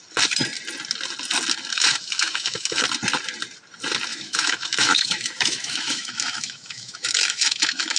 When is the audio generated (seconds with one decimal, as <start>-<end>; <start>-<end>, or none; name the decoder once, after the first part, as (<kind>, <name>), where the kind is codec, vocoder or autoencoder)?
1.7-2.8 (autoencoder, DAC-VAE); 4.1-8.0